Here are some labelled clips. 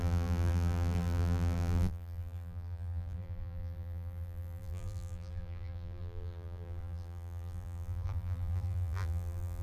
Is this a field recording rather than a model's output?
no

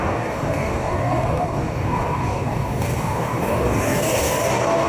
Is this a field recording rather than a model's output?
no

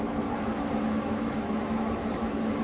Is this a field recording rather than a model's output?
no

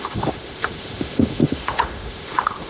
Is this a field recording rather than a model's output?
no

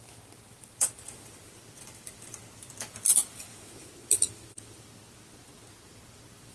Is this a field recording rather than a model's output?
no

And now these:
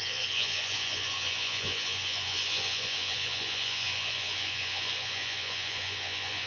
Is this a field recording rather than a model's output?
no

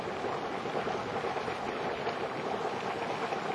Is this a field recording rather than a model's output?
yes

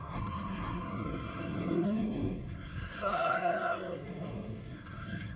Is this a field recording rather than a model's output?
no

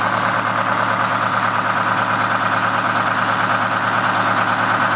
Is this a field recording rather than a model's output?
yes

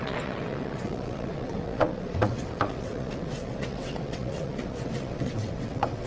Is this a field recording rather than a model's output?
no